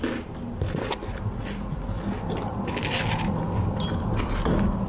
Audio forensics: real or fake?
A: real